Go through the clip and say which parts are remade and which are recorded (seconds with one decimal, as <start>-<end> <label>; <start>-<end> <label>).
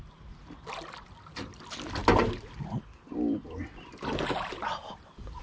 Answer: 0.0-5.4 recorded